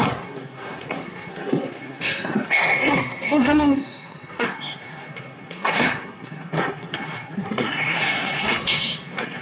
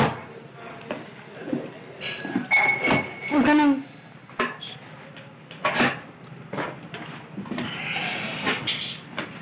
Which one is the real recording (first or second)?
second